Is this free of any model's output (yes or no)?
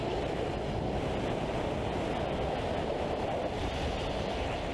yes